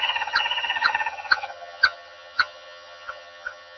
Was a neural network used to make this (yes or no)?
yes